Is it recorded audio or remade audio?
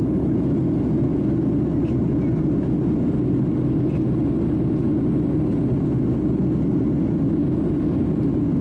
recorded